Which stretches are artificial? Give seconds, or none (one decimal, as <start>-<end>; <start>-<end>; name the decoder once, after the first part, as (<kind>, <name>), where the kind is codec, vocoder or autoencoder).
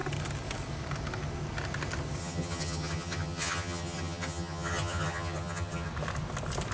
2.2-5.9 (vocoder, HiFi-GAN)